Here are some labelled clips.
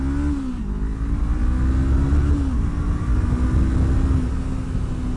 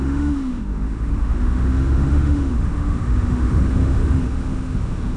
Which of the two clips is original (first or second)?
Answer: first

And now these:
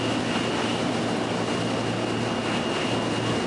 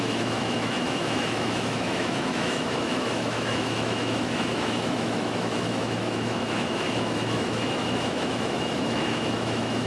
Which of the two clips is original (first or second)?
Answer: first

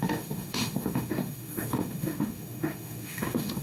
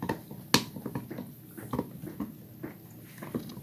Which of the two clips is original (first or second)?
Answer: second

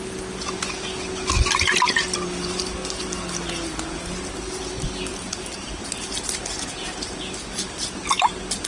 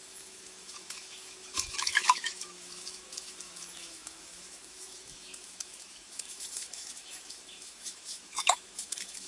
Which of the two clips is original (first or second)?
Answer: first